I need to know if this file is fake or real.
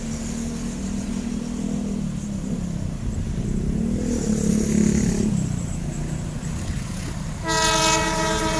real